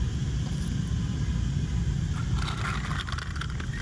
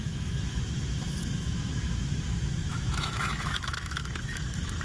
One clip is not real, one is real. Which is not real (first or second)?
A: second